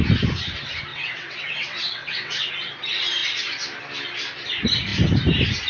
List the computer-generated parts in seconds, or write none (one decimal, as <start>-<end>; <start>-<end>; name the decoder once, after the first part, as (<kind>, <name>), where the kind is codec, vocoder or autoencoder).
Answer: 0.9-2.5 (vocoder, WaveNeXt)